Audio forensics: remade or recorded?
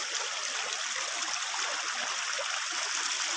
recorded